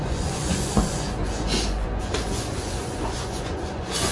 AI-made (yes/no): yes